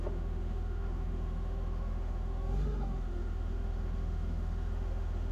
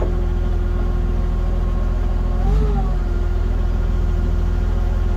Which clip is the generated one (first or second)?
first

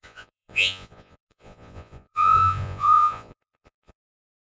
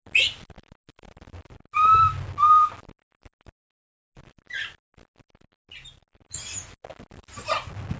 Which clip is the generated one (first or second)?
first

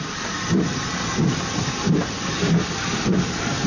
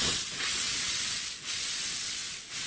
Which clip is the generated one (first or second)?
second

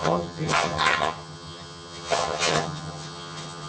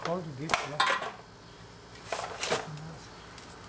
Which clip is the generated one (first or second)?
first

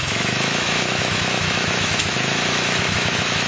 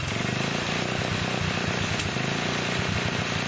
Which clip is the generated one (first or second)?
first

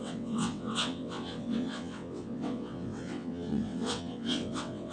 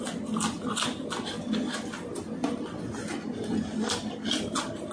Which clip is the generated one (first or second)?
first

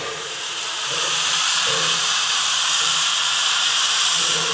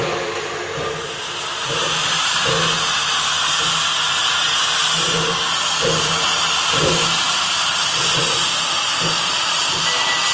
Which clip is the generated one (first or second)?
first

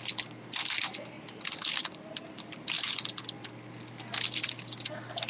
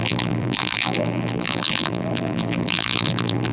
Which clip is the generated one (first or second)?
second